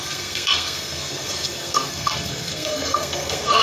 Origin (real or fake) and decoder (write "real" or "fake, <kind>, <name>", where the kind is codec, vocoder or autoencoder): fake, codec, SNAC